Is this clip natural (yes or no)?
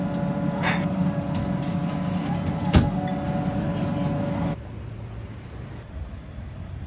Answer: yes